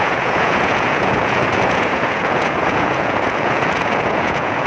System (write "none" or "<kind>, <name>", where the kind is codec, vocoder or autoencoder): vocoder, Vocos